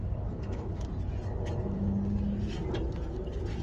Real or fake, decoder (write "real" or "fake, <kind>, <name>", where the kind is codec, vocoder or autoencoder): real